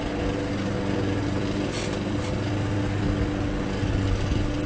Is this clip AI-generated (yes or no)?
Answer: no